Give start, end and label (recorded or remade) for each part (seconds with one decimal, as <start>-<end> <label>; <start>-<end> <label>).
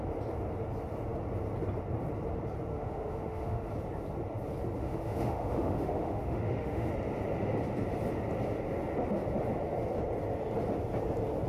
0.0-2.7 recorded; 2.7-3.7 remade; 3.7-4.8 recorded; 4.8-6.9 remade; 6.9-11.5 recorded